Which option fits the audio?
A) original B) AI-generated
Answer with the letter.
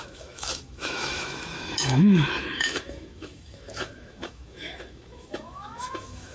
B